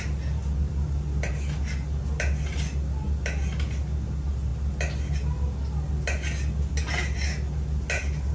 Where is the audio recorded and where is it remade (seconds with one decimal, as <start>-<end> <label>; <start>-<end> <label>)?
0.0-8.3 recorded

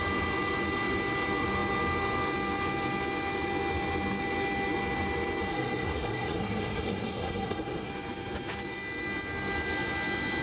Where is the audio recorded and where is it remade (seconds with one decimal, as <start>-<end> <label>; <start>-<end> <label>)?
0.0-5.5 recorded; 5.5-7.9 remade; 7.9-10.4 recorded

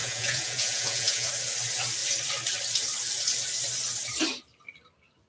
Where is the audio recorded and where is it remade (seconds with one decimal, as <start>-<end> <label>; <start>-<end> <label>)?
0.0-1.3 remade; 1.3-5.3 recorded